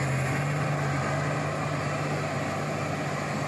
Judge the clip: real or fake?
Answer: real